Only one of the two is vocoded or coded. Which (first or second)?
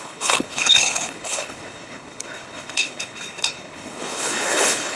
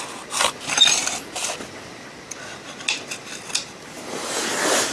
first